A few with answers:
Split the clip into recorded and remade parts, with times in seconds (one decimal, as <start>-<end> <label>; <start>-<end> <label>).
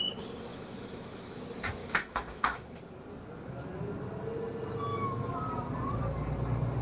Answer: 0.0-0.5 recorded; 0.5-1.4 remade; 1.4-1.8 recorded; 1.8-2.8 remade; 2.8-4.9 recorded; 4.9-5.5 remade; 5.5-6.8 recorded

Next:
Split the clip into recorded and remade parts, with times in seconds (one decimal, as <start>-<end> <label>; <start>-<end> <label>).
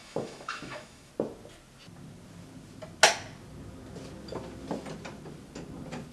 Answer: 0.0-1.1 remade; 1.1-6.1 recorded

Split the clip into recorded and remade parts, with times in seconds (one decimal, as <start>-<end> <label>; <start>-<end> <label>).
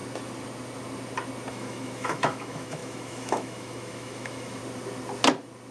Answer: 0.0-1.5 recorded; 1.5-4.6 remade; 4.6-5.7 recorded